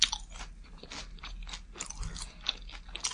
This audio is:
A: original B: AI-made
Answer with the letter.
A